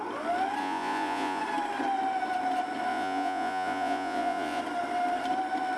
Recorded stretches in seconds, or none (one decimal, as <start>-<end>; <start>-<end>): 0.0-0.6; 1.4-2.9; 4.6-5.8